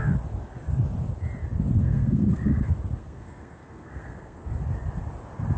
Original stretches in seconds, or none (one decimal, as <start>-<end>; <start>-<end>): 0.0-1.8; 2.6-3.0; 4.5-5.6